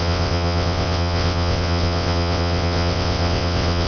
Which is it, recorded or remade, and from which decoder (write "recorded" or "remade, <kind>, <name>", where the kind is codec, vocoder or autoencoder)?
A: remade, vocoder, WaveNeXt